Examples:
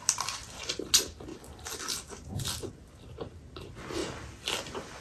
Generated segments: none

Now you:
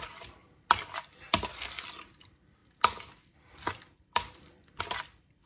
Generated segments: 0.0-0.4 (vocoder, BigVGAN v2); 2.2-2.6; 4.8-5.5

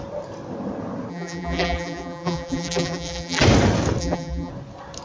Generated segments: 1.1-3.4 (vocoder, BigVGAN v2); 4.0-4.5

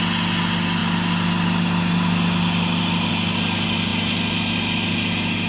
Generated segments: 0.8-3.1 (vocoder, BigVGAN v2); 3.9-5.5